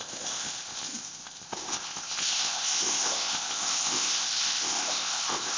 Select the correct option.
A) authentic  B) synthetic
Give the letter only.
B